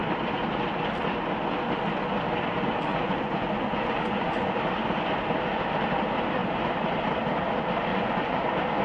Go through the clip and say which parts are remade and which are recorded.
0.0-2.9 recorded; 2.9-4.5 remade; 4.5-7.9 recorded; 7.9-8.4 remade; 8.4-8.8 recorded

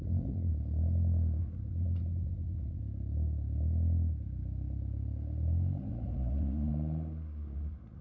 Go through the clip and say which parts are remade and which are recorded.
0.0-0.5 remade; 0.5-1.4 recorded; 1.4-2.8 remade; 2.8-5.8 recorded; 5.8-6.7 remade; 6.7-7.6 recorded; 7.6-8.0 remade

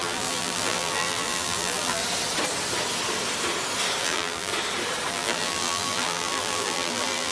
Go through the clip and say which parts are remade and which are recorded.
0.0-2.0 remade; 2.0-4.0 recorded; 4.0-4.5 remade; 4.5-5.1 recorded; 5.1-7.3 remade

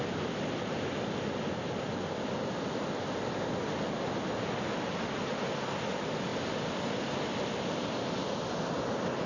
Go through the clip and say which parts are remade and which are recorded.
0.0-9.3 recorded

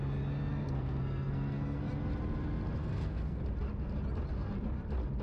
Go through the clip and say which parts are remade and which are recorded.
0.0-0.5 recorded; 0.5-1.8 remade; 1.8-2.8 recorded; 2.8-3.4 remade; 3.4-5.2 recorded